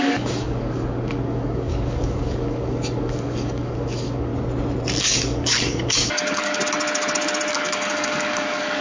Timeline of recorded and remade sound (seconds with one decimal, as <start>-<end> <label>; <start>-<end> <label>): 0.0-4.3 remade; 4.3-5.0 recorded; 5.0-6.6 remade; 6.6-7.5 recorded; 7.5-8.8 remade